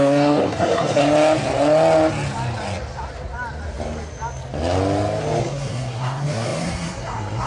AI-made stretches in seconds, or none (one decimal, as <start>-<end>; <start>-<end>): 0.0-1.0; 5.4-7.5